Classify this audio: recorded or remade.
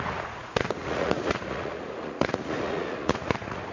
remade